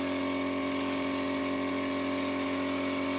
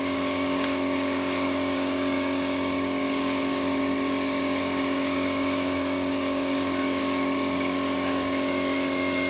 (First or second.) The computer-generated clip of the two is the second